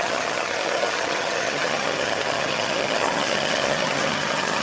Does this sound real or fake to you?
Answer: fake